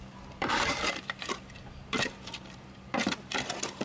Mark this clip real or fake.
fake